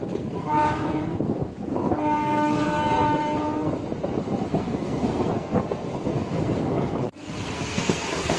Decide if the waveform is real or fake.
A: fake